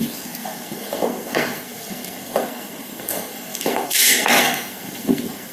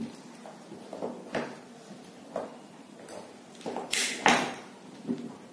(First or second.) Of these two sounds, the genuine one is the second